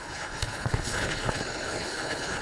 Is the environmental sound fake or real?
fake